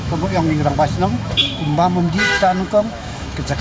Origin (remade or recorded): remade